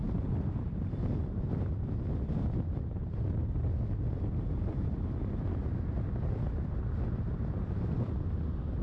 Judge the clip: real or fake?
real